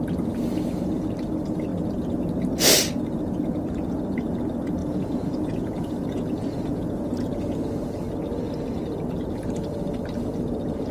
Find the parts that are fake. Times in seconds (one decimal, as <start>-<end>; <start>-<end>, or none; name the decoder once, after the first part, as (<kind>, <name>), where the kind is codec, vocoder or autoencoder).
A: 4.8-7.3 (vocoder, Vocos)